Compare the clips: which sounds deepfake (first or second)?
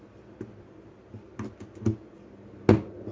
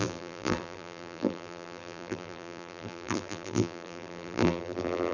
second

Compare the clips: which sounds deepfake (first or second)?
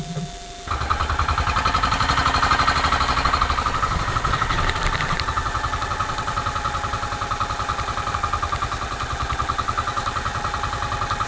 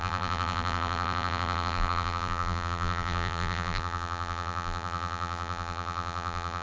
second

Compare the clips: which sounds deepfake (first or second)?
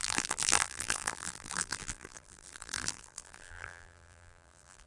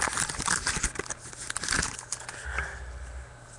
first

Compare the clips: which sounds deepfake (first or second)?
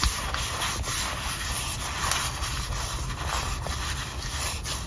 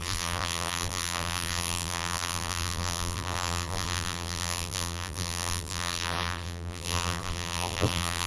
second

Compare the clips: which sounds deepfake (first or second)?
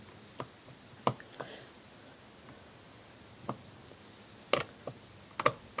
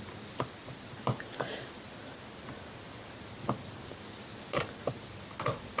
second